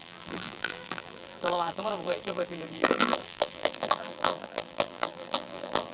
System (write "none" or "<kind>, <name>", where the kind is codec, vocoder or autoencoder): vocoder, BigVGAN v2